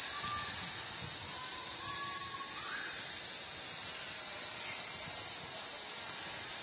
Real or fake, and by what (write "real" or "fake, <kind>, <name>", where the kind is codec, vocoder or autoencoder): real